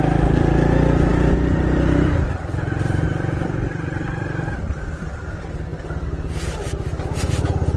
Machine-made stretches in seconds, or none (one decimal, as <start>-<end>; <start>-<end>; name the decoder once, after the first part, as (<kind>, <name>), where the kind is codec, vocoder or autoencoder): none